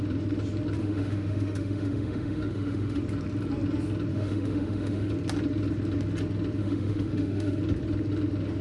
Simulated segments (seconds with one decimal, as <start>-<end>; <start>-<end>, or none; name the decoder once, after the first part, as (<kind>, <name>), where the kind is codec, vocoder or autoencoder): 0.8-3.0 (autoencoder, DAC-VAE); 4.1-5.1; 6.6-7.6